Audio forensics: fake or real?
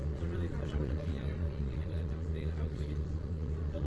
fake